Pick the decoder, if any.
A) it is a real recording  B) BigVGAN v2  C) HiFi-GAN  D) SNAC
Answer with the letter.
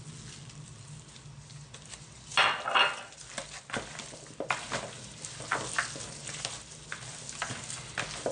A